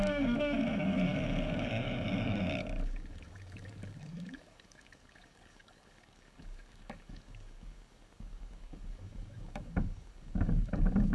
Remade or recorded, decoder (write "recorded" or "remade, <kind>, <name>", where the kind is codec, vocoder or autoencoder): remade, codec, DAC